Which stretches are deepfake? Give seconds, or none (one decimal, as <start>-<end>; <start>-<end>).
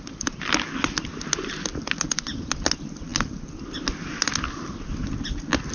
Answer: none